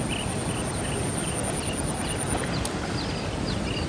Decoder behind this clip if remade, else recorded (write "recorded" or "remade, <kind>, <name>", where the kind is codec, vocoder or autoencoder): recorded